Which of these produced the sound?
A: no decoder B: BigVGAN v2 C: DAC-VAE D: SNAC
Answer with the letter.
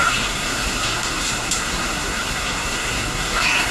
D